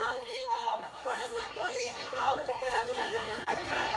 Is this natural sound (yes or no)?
no